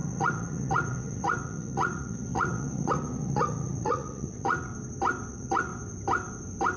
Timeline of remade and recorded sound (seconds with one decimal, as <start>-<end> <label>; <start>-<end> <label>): 0.0-4.7 remade; 4.7-5.3 recorded; 5.3-5.7 remade; 5.7-6.8 recorded